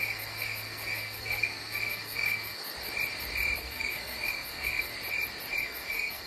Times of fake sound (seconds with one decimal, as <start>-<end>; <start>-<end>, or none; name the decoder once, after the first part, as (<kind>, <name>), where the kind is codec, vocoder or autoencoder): 0.0-2.6 (codec, SNAC); 3.6-4.9; 5.6-6.3